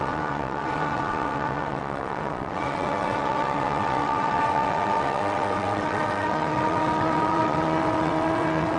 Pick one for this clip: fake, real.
fake